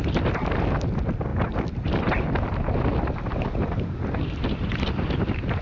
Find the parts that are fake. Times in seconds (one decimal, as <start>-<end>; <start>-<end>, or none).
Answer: none